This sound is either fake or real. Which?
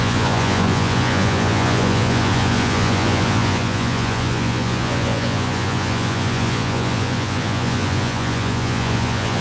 fake